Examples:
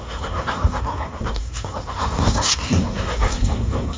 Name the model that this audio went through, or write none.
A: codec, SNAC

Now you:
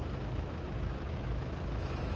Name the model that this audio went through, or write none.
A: autoencoder, DAC-VAE